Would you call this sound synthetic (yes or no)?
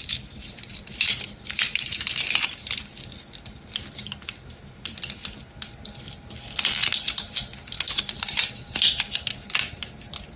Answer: no